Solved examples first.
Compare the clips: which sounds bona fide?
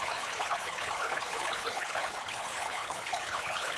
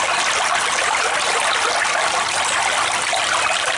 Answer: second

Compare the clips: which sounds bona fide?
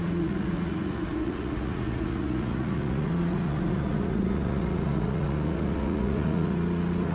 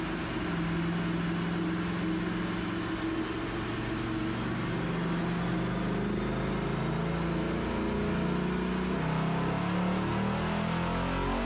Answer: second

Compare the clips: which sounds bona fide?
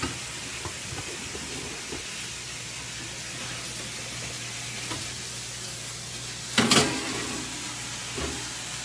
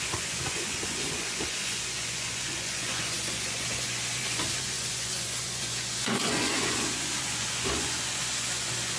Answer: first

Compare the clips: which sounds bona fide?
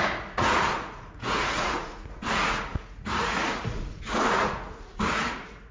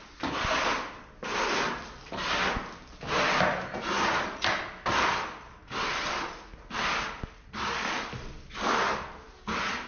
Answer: second